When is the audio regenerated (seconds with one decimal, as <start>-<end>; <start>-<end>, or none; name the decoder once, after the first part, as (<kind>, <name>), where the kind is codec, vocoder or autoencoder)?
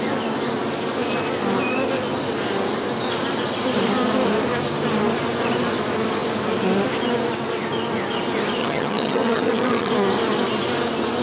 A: 8.6-9.9 (vocoder, HiFi-GAN)